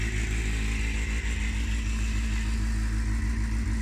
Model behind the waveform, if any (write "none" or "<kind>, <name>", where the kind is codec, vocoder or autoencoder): none